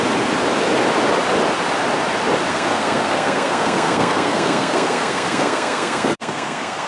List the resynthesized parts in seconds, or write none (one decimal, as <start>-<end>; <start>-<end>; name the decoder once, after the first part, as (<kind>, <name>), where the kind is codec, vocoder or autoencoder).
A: 2.5-6.9 (codec, SNAC)